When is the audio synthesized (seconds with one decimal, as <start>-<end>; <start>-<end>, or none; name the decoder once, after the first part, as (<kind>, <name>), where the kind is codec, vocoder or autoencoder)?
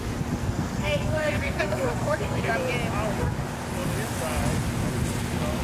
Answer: 0.4-2.5 (codec, SNAC)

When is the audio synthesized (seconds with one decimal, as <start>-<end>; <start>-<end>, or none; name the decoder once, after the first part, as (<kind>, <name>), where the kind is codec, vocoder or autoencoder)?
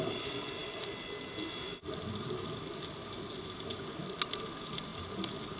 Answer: none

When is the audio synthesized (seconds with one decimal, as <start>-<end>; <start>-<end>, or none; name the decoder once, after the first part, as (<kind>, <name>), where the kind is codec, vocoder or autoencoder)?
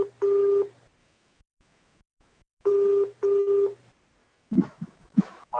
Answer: 1.0-2.7 (autoencoder, DAC-VAE); 4.2-5.6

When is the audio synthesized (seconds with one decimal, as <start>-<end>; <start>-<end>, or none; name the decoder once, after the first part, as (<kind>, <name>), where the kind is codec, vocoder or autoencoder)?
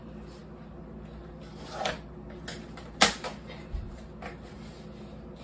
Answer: none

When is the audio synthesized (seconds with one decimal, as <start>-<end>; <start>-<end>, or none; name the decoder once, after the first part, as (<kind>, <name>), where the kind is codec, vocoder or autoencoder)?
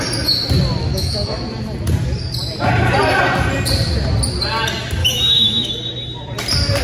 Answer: 0.8-1.4 (autoencoder, DAC-VAE); 5.0-5.7